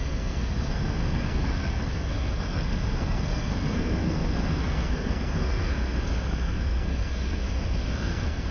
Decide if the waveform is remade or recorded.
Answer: remade